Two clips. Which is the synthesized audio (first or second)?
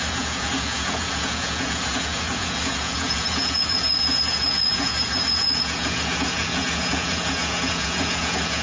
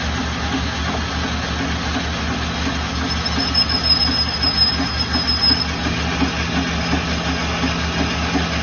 first